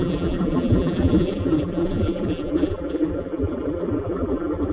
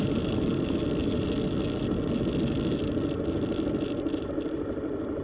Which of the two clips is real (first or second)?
second